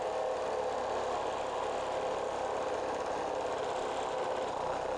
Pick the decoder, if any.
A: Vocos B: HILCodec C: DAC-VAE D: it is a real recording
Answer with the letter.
D